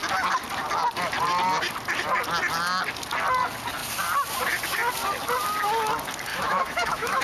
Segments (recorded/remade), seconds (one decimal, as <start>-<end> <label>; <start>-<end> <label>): 0.0-6.3 recorded; 6.3-7.2 remade